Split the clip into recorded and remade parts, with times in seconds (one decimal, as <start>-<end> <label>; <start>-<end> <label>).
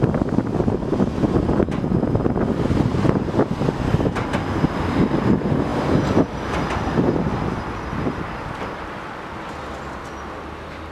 0.0-10.9 recorded